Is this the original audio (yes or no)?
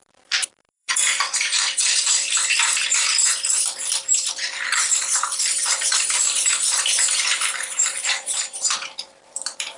no